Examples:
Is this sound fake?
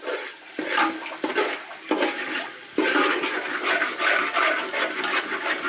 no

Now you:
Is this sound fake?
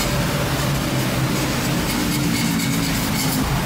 no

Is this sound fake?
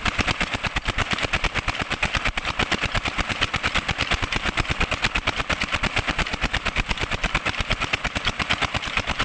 no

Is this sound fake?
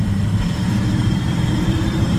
yes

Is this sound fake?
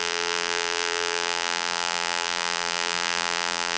yes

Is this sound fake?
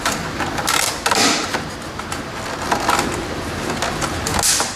no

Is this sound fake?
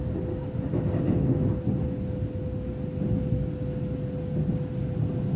no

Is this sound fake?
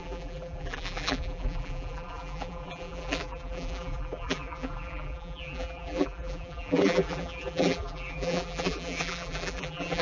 yes